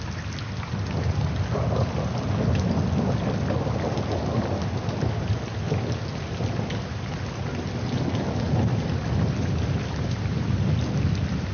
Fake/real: real